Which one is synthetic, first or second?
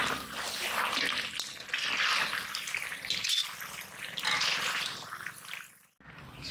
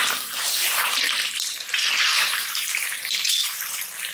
second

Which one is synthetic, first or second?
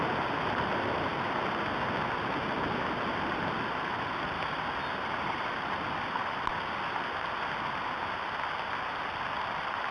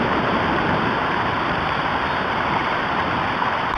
second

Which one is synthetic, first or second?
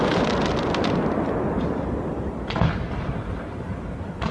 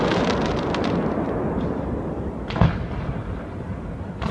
first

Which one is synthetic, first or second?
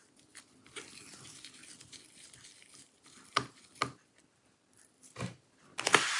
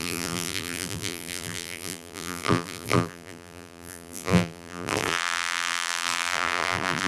second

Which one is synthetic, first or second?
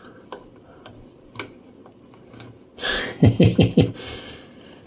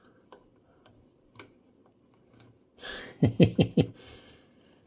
second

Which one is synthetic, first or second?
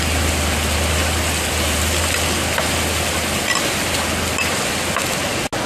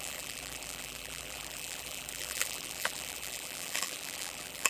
second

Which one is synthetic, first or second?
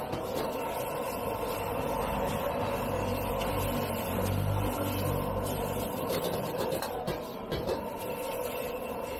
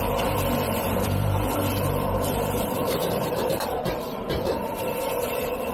second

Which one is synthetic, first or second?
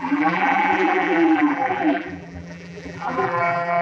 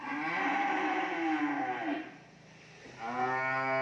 first